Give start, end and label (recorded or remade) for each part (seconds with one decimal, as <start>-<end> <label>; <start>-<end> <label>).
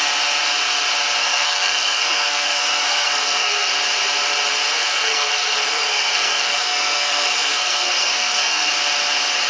0.0-1.2 recorded; 1.2-3.7 remade; 3.7-4.7 recorded; 4.7-8.7 remade; 8.7-9.5 recorded